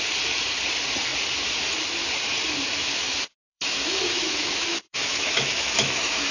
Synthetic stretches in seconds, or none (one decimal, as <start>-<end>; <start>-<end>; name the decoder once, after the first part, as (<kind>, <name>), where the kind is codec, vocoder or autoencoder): 2.8-6.3 (autoencoder, DAC-VAE)